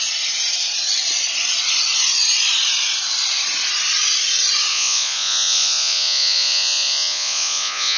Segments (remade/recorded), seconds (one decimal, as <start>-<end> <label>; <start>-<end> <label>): 0.0-4.7 recorded; 4.7-8.0 remade